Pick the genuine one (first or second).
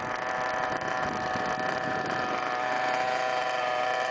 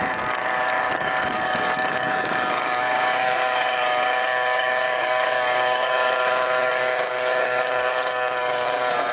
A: first